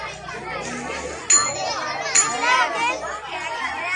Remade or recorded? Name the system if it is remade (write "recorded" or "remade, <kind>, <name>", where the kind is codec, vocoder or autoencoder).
recorded